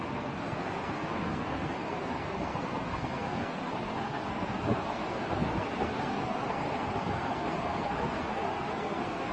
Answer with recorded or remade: remade